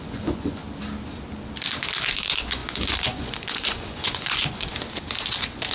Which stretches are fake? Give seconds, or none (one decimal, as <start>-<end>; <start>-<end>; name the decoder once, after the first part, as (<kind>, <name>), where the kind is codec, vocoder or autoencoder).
0.0-0.6 (vocoder, Vocos); 2.2-4.7